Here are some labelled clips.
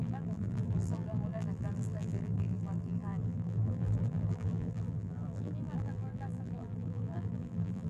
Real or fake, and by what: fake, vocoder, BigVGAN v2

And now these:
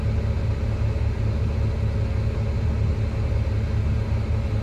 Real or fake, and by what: real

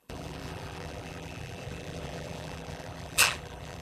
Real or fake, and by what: fake, vocoder, BigVGAN v2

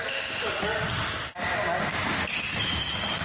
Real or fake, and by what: real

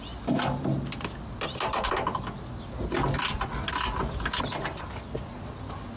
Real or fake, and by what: real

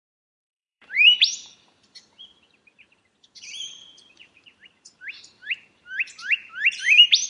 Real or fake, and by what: fake, vocoder, BigVGAN v2